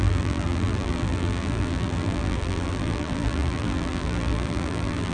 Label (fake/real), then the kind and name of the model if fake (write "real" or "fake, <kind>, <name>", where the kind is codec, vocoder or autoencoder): fake, vocoder, BigVGAN v2